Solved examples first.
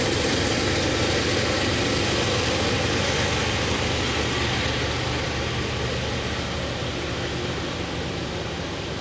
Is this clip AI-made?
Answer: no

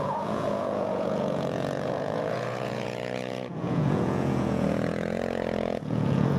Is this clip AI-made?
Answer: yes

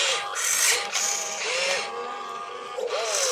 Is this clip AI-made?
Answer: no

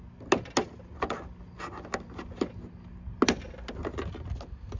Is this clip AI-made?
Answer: no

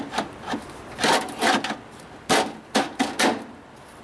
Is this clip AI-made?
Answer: no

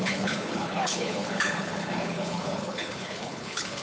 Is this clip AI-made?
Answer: yes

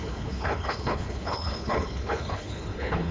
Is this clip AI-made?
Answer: yes